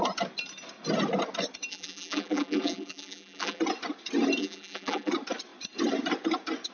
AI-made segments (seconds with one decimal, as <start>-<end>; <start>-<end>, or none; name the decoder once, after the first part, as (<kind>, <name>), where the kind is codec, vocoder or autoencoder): 1.7-3.6 (vocoder, BigVGAN v2); 4.4-5.1

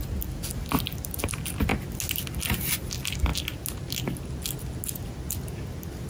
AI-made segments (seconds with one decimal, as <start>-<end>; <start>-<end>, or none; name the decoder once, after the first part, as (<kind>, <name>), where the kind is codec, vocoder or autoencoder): none

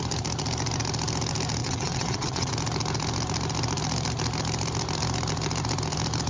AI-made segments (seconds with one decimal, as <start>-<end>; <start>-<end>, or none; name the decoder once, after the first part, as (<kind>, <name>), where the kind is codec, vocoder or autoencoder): 1.6-2.5 (vocoder, WaveNeXt)

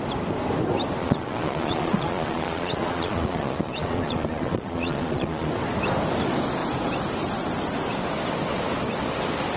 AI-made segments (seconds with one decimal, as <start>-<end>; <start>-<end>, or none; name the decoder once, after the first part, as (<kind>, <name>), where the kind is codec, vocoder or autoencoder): 1.0-5.5 (vocoder, Vocos)

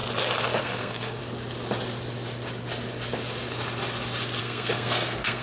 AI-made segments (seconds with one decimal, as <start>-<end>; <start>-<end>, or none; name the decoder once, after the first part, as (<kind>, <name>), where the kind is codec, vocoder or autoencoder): 0.6-1.2 (codec, SNAC); 4.4-5.4

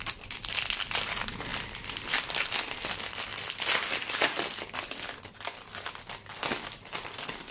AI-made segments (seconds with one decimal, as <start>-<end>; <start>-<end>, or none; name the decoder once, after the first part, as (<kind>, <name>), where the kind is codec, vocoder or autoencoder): none

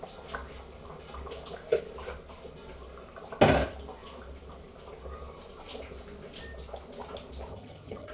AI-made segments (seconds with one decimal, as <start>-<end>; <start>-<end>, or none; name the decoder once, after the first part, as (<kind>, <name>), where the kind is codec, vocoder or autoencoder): 7.5-8.1 (vocoder, HiFi-GAN)